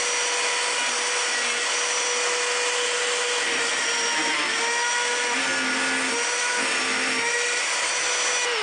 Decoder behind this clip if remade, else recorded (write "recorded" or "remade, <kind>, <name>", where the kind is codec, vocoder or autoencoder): recorded